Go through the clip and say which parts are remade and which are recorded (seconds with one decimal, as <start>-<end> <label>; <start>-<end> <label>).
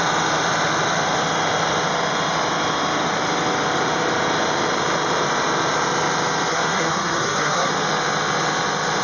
0.0-6.5 recorded; 6.5-7.7 remade; 7.7-9.0 recorded